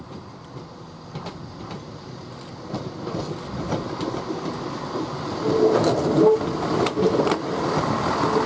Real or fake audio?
real